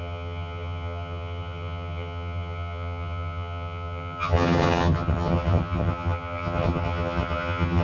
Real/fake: fake